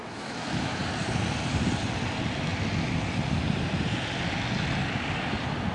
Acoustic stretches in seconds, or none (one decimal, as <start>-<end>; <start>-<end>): 0.8-5.7